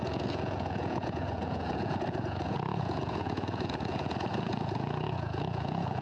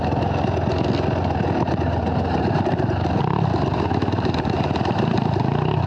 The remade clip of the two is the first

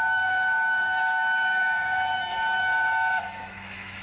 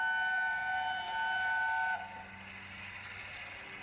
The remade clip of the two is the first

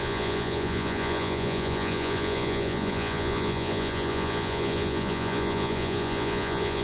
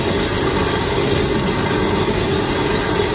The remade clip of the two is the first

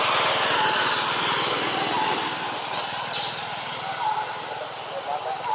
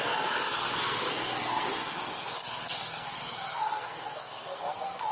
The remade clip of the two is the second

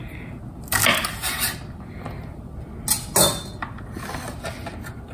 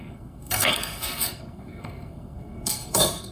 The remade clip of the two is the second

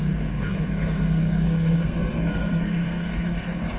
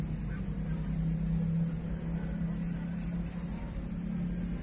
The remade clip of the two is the first